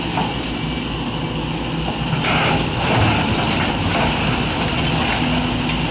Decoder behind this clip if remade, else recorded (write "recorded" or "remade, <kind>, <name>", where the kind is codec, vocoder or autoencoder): recorded